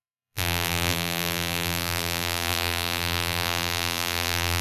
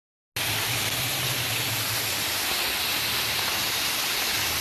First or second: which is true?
second